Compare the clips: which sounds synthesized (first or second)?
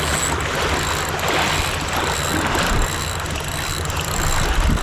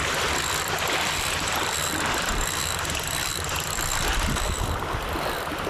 second